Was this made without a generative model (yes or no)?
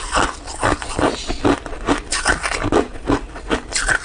yes